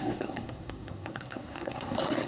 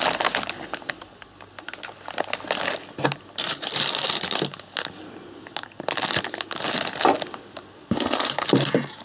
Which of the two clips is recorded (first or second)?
second